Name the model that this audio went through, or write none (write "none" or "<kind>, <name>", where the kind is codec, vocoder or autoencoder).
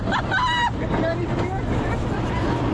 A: none